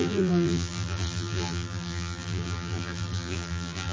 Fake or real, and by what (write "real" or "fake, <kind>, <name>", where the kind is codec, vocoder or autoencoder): fake, vocoder, BigVGAN v2